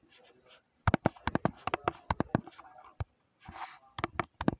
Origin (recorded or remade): recorded